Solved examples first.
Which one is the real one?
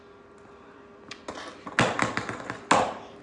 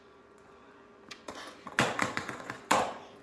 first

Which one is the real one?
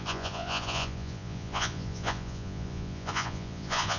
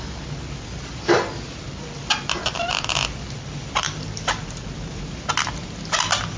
second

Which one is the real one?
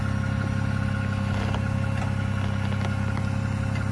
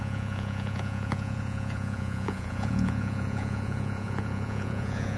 first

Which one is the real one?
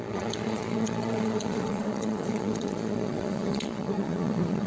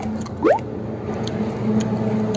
second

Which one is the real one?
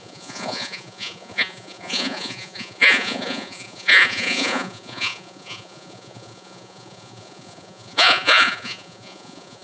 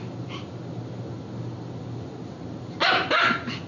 second